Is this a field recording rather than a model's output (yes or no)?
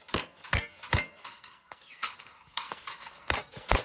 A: no